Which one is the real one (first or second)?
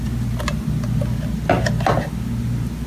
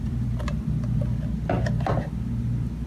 first